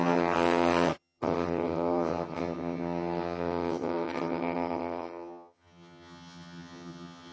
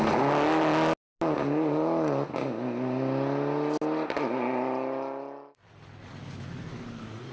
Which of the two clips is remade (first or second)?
first